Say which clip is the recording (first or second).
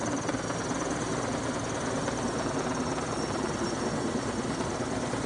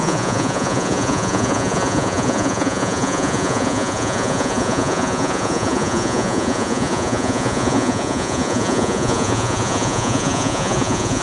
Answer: first